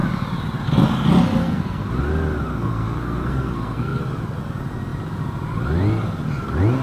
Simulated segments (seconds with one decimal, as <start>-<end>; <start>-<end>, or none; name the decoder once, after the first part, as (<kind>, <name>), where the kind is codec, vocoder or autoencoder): 1.4-1.9 (codec, SNAC); 2.5-4.0